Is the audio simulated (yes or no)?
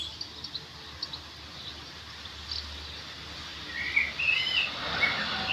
no